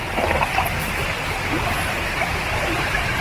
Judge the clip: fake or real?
real